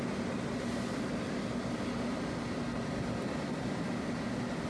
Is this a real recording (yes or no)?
yes